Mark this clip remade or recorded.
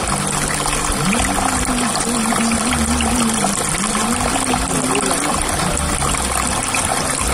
recorded